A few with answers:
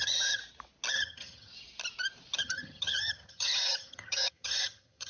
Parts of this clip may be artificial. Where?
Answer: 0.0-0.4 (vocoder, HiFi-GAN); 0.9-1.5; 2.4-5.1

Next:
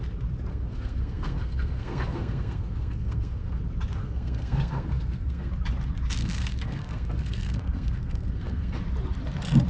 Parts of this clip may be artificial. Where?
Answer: 0.5-3.6 (codec, SNAC); 4.0-5.5; 6.2-8.8

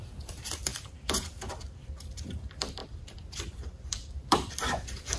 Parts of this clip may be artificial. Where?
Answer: 0.0-0.7 (vocoder, BigVGAN v2); 2.0-5.2